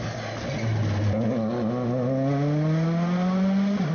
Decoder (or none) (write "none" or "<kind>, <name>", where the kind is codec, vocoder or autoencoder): none